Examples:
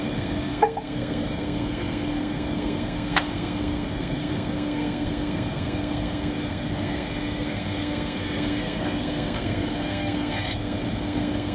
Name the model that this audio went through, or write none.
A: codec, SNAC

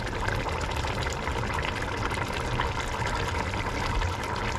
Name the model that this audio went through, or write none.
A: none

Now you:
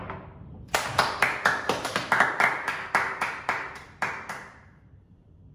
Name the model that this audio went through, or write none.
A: none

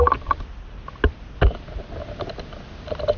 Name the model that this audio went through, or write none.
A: none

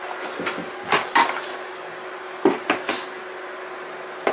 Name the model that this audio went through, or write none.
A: none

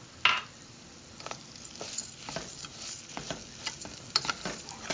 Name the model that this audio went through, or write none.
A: none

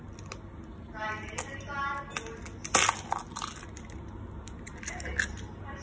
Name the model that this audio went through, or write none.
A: none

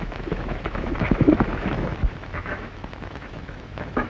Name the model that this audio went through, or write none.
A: autoencoder, DAC-VAE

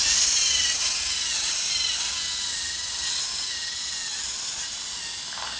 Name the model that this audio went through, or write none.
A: none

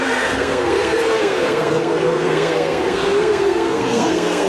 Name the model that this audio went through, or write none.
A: codec, SNAC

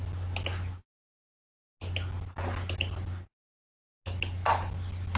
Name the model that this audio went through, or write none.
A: none